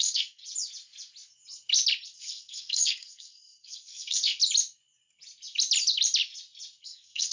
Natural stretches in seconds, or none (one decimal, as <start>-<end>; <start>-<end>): 0.4-2.2; 4.4-6.8